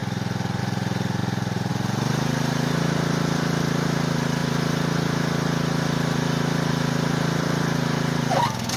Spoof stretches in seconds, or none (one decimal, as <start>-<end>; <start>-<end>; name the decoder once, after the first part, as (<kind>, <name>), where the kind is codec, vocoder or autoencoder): 0.6-8.8 (vocoder, BigVGAN v2)